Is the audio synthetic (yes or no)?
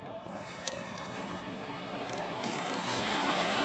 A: yes